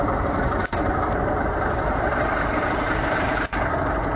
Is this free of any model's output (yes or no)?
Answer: yes